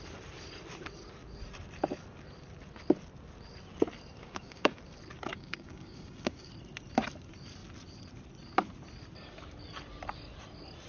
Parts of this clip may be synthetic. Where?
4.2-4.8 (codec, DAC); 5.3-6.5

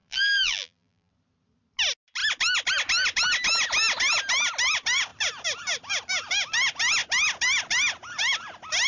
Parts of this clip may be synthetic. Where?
0.0-1.1 (vocoder, BigVGAN v2)

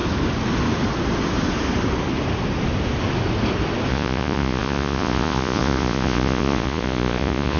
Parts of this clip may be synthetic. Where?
3.9-7.6 (vocoder, Vocos)

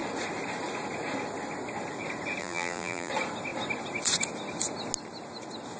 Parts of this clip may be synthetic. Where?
2.4-3.1 (vocoder, BigVGAN v2)

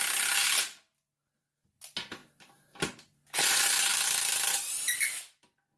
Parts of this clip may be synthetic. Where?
none

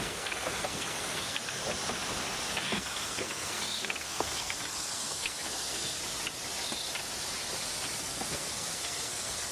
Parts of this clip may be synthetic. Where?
0.0-1.6 (codec, SNAC); 2.5-6.0; 8.0-9.5